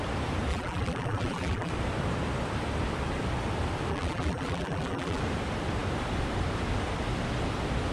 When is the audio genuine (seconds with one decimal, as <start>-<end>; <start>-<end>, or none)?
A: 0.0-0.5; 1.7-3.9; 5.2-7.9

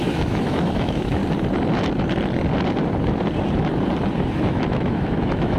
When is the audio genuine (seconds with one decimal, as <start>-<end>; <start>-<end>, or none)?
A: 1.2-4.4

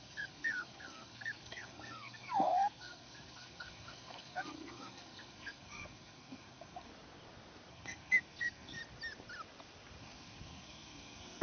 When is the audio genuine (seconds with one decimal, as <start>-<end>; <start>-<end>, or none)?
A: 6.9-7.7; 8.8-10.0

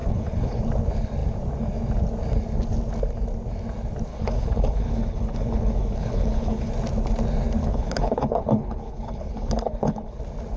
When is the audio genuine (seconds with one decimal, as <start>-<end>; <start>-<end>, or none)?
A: 0.6-4.1; 6.7-7.6; 10.2-10.6

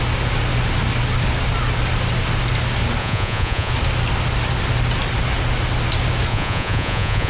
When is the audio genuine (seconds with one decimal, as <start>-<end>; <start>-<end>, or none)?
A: 0.0-3.0; 3.7-6.3

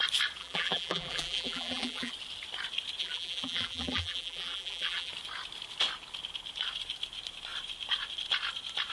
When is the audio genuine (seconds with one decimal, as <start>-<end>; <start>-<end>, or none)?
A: 0.0-0.4; 2.1-3.0; 5.1-8.9

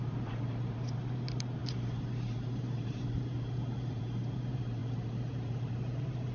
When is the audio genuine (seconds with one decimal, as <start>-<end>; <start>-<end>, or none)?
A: none

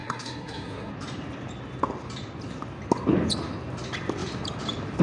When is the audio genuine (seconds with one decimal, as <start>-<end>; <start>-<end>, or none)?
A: 0.9-5.0